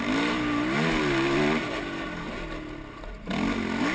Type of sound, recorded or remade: recorded